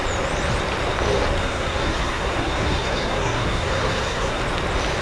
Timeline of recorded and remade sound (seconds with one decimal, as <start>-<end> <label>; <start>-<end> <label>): 0.0-1.4 recorded; 1.4-4.4 remade; 4.4-5.0 recorded